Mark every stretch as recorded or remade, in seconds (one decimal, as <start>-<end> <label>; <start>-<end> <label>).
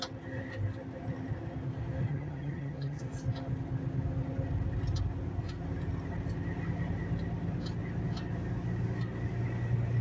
0.0-2.1 recorded; 2.1-3.0 remade; 3.0-10.0 recorded